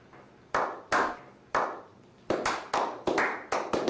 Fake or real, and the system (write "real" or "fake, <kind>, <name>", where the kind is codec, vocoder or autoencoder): real